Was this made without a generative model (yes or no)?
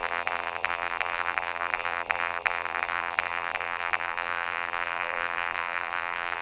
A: no